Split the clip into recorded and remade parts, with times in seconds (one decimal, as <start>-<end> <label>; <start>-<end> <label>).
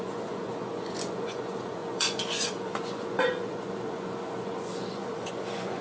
0.0-5.8 remade